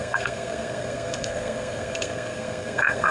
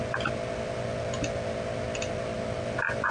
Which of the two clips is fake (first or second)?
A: first